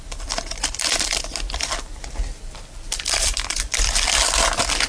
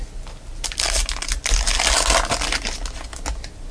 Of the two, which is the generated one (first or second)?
first